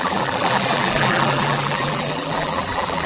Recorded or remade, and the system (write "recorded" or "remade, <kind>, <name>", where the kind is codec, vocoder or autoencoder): remade, vocoder, BigVGAN v2